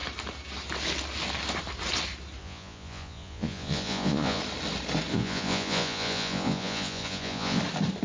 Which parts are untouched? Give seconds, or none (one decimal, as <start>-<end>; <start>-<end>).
0.0-2.4; 4.4-5.1; 7.6-8.0